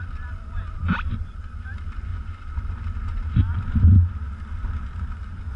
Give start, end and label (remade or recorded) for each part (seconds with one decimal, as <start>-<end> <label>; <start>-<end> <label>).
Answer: 0.0-5.6 recorded